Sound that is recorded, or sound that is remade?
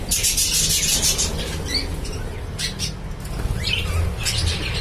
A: recorded